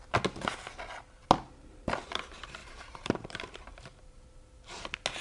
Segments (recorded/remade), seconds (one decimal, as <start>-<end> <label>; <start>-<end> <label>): 0.0-2.6 recorded; 2.6-4.2 remade; 4.2-5.2 recorded